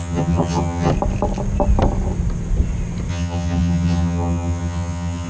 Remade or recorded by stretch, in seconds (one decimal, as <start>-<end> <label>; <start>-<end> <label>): 0.0-0.9 remade; 0.9-3.1 recorded; 3.1-5.3 remade